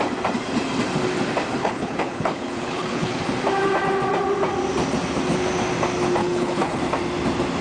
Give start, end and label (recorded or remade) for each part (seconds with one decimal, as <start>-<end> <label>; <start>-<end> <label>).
0.0-1.6 recorded; 1.6-3.2 remade; 3.2-6.2 recorded; 6.2-6.8 remade; 6.8-7.6 recorded

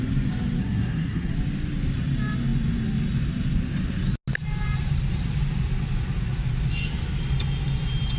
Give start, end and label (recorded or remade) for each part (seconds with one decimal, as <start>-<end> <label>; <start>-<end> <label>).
0.0-0.6 recorded; 0.6-1.3 remade; 1.3-8.2 recorded

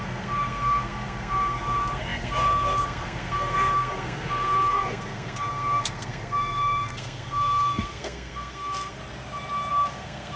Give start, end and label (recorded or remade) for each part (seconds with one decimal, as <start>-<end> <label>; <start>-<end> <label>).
0.0-9.0 remade; 9.0-9.7 recorded; 9.7-10.4 remade